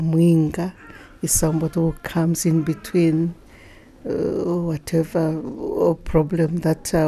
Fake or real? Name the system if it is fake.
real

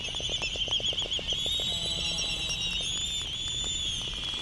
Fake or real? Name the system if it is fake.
real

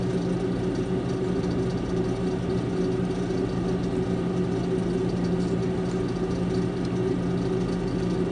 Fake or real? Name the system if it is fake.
real